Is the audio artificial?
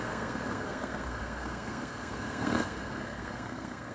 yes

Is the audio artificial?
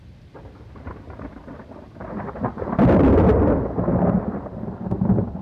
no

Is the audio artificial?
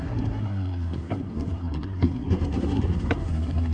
yes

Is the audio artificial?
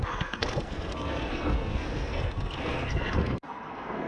yes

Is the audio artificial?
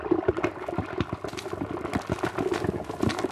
no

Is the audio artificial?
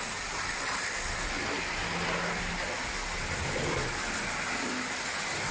no